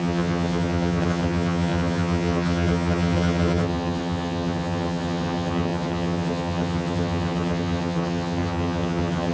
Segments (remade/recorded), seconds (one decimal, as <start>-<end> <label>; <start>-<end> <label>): 0.0-9.3 remade